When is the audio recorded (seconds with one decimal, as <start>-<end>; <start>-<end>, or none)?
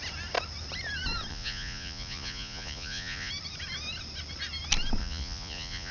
0.0-1.3; 3.3-5.0